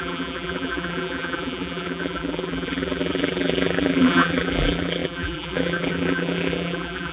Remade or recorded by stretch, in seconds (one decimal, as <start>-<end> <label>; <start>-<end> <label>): 0.0-7.1 remade